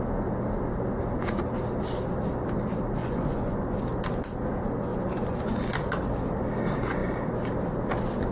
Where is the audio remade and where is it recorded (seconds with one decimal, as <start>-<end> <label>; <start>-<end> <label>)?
0.0-3.0 recorded; 3.0-3.8 remade; 3.8-4.9 recorded; 4.9-5.6 remade; 5.6-8.3 recorded